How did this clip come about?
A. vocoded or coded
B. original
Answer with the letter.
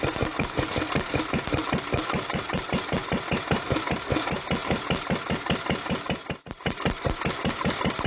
B